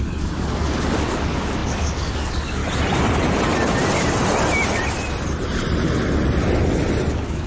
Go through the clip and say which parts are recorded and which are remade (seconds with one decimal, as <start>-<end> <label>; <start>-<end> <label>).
0.0-2.6 remade; 2.6-7.1 recorded; 7.1-7.5 remade